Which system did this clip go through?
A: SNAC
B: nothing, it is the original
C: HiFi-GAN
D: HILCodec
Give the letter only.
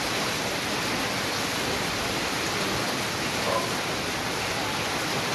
B